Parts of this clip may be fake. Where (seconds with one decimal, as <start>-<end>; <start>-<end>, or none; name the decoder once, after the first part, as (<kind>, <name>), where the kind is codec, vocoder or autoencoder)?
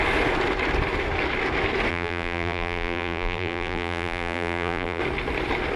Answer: 1.9-5.0 (vocoder, BigVGAN v2)